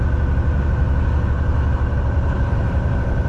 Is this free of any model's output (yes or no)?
yes